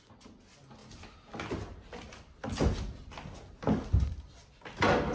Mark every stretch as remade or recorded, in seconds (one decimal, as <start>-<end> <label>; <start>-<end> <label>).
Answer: 0.0-5.1 recorded